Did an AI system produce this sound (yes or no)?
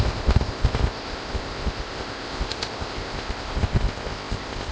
yes